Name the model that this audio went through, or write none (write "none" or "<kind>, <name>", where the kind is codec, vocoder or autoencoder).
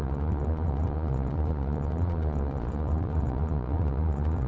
vocoder, Vocos